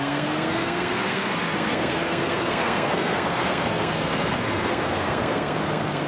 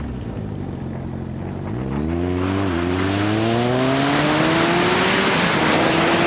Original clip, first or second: second